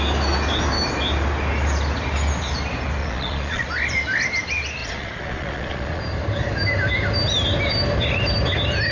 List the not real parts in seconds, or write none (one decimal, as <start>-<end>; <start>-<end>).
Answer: 3.0-3.7; 4.8-6.0